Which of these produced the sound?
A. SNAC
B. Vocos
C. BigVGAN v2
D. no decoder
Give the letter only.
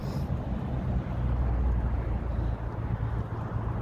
D